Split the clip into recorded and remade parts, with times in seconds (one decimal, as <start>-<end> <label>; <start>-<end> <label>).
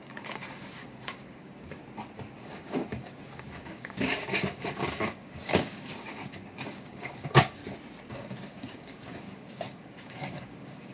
0.0-1.8 remade; 1.8-2.4 recorded; 2.4-7.6 remade; 7.6-8.1 recorded; 8.1-10.9 remade